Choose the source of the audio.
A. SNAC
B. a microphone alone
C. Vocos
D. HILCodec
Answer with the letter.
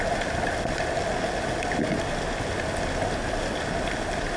B